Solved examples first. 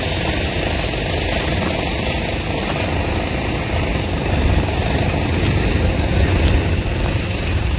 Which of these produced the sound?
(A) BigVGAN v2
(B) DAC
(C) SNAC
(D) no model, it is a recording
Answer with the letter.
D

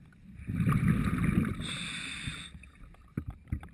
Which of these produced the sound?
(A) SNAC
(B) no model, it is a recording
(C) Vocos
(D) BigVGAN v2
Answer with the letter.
B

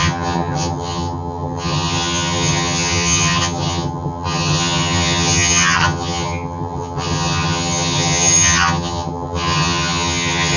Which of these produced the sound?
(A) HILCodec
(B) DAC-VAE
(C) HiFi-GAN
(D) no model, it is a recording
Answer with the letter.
C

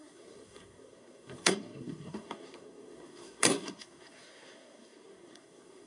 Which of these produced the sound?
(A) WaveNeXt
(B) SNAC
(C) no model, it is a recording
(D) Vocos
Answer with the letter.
B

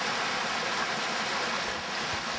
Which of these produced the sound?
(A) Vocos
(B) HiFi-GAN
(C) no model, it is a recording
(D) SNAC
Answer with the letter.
C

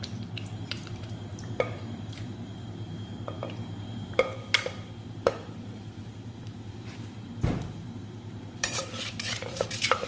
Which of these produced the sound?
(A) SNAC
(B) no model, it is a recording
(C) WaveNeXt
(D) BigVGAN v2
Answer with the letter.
D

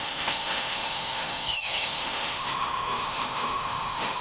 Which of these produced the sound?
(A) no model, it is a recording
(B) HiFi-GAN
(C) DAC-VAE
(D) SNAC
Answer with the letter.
C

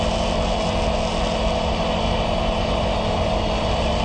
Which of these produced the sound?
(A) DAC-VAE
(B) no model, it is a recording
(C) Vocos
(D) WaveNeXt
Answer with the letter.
B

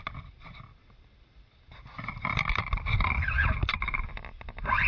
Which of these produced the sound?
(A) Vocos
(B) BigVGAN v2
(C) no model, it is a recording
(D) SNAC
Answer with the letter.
C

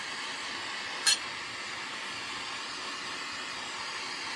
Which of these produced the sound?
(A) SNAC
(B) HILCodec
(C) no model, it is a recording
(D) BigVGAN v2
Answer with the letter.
C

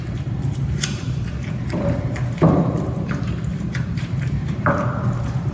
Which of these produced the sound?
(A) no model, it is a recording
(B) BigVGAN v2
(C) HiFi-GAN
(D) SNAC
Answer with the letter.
B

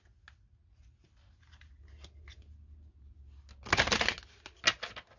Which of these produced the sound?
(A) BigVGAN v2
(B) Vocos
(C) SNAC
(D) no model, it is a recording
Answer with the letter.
D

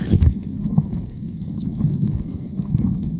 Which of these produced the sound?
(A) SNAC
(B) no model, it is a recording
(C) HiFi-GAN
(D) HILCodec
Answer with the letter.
A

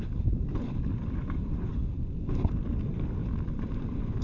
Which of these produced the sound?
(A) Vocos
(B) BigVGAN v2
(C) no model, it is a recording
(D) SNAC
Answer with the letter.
C